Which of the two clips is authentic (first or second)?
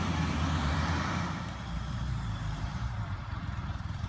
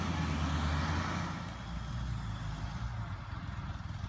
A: second